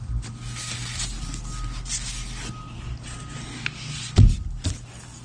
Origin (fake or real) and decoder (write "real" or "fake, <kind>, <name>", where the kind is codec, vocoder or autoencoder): real